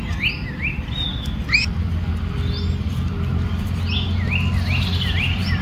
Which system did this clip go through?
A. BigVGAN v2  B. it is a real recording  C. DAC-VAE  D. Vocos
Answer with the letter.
B